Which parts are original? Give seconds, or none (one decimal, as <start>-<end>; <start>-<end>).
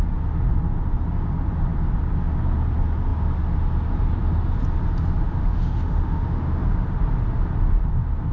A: 0.0-5.4; 6.6-8.3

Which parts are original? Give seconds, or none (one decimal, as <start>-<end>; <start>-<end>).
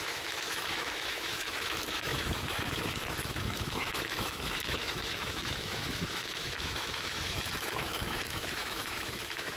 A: none